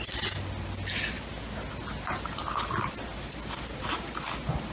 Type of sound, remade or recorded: recorded